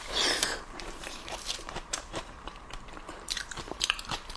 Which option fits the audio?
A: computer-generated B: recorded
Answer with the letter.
A